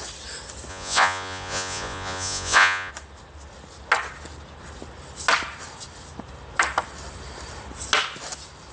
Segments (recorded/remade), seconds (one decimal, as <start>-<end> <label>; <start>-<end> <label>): 0.0-0.7 recorded; 0.7-2.9 remade; 2.9-8.7 recorded